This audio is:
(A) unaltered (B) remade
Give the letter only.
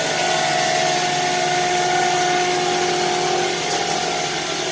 A